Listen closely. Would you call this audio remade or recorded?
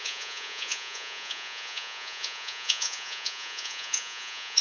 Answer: remade